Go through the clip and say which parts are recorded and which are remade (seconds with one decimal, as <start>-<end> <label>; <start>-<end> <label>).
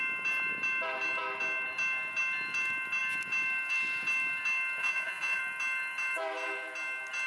0.0-4.8 recorded; 4.8-5.4 remade; 5.4-7.3 recorded